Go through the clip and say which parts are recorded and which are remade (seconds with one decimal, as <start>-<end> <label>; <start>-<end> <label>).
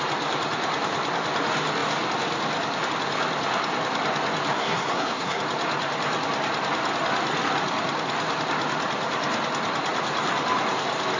0.0-4.5 recorded; 4.5-5.4 remade; 5.4-11.2 recorded